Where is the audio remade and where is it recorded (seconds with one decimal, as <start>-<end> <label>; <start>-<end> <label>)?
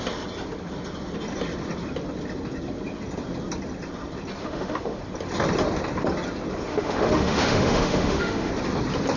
0.0-4.4 recorded; 4.4-5.0 remade; 5.0-6.7 recorded; 6.7-8.5 remade; 8.5-9.2 recorded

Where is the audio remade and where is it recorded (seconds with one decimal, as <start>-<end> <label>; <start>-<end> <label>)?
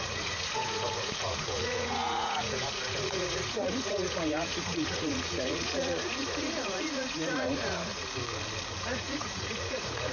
0.0-7.9 remade; 7.9-8.8 recorded; 8.8-10.1 remade